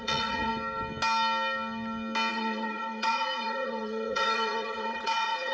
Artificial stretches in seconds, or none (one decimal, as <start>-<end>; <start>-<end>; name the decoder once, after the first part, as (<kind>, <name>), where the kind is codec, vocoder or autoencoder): 0.0-0.5 (vocoder, Vocos); 2.3-5.5